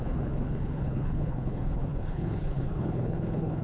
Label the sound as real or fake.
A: fake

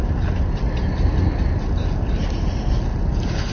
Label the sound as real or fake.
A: real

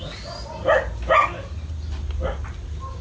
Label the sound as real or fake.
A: real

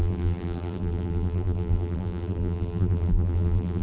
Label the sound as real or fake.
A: fake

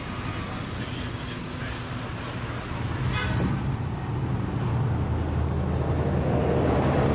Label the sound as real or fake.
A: real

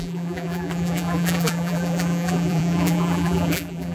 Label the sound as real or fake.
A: fake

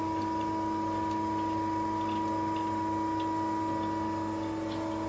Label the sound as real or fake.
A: real